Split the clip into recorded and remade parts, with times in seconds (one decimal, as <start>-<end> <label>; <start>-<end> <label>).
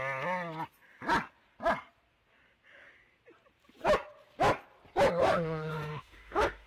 0.0-5.2 recorded; 5.2-6.7 remade